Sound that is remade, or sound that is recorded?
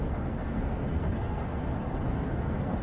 remade